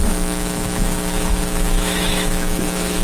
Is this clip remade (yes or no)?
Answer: yes